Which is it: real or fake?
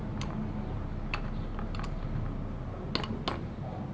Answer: real